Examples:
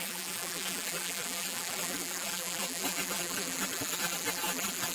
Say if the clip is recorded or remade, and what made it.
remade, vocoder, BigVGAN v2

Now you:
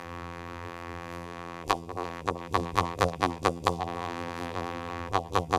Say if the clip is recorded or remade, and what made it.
remade, vocoder, BigVGAN v2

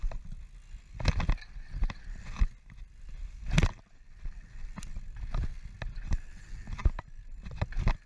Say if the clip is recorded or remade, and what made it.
recorded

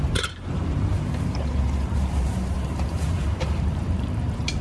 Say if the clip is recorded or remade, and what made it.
remade, vocoder, BigVGAN v2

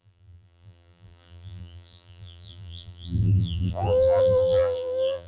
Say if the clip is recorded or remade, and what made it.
remade, vocoder, BigVGAN v2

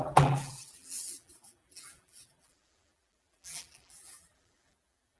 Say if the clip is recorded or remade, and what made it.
remade, vocoder, BigVGAN v2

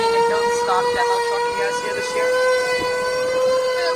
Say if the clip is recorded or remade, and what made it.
recorded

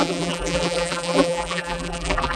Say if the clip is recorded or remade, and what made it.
remade, vocoder, BigVGAN v2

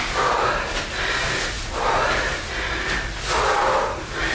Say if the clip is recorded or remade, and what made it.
recorded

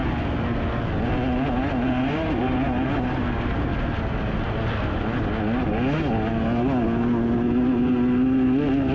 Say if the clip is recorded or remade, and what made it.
recorded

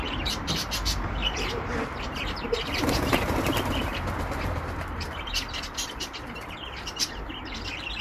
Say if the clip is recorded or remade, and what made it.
remade, vocoder, BigVGAN v2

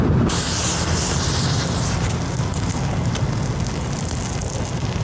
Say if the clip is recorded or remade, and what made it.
recorded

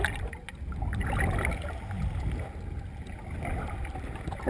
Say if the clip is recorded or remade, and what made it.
recorded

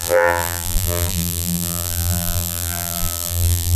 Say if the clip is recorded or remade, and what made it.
remade, vocoder, BigVGAN v2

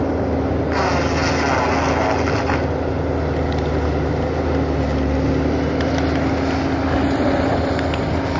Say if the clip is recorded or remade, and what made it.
recorded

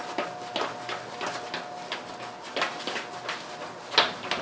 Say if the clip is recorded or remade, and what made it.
recorded